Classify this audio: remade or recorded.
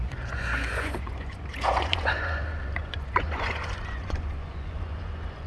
remade